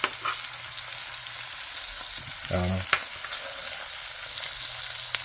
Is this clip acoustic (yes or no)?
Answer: yes